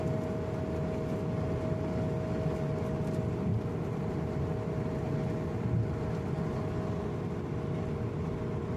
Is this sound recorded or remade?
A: recorded